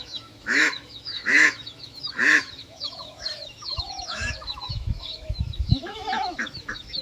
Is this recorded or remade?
remade